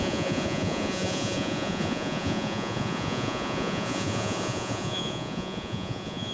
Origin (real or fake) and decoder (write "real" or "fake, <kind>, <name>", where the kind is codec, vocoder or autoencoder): fake, vocoder, Vocos